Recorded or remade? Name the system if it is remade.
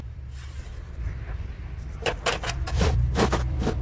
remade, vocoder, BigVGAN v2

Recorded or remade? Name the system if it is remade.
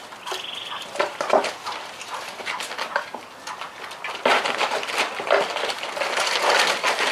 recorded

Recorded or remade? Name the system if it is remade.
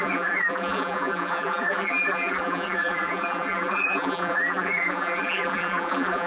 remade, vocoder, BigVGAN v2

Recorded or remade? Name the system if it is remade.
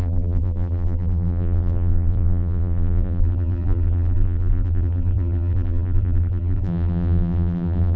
remade, vocoder, BigVGAN v2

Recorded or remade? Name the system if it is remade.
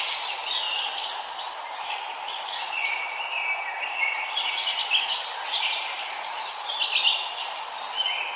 recorded